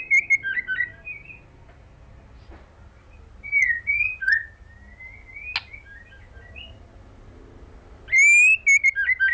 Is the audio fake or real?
real